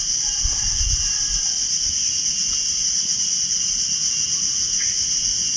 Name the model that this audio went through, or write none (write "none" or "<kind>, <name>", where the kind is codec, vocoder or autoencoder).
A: none